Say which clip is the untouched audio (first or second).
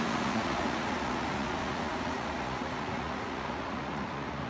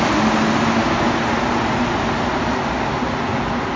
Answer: second